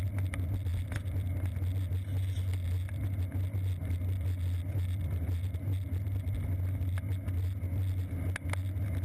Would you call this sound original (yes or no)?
yes